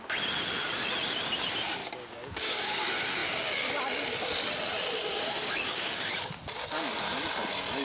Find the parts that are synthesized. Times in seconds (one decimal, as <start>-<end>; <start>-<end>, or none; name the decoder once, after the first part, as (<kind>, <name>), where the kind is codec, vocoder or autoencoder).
1.8-2.7 (codec, DAC); 5.1-6.4